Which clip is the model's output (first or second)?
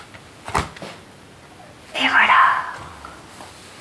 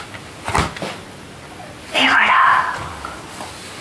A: second